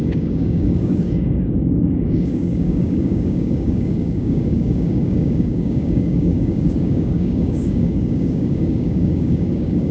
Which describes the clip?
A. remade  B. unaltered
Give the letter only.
A